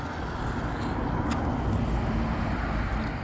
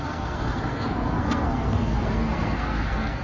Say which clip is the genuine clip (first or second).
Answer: first